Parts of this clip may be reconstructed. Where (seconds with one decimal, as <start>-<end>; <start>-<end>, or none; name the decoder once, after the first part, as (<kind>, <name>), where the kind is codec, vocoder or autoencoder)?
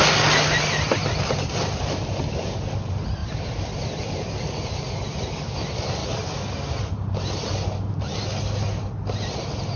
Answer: none